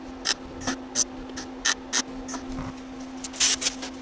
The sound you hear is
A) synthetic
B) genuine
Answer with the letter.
B